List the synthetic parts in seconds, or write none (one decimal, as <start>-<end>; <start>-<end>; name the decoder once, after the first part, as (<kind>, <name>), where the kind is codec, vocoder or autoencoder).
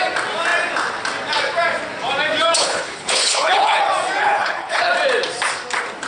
2.6-3.8 (codec, HILCodec); 4.2-4.9